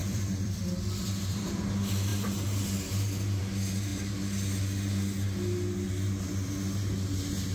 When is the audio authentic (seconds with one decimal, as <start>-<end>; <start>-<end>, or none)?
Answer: 1.6-7.5